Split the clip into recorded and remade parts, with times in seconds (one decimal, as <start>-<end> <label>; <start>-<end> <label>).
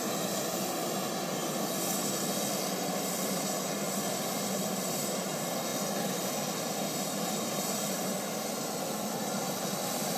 0.0-1.4 recorded; 1.4-2.1 remade; 2.1-10.2 recorded